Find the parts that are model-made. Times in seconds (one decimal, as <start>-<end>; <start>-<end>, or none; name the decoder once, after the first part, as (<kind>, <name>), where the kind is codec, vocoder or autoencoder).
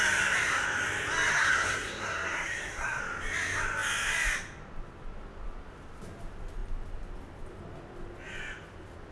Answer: 1.3-3.0 (codec, SNAC)